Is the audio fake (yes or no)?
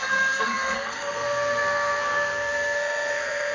yes